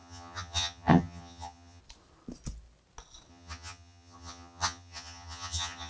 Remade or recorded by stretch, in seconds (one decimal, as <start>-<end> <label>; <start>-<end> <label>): 0.0-1.8 remade; 1.8-3.3 recorded; 3.3-5.9 remade